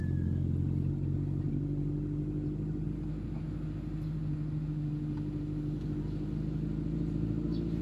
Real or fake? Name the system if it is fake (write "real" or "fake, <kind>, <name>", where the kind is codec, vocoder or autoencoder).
real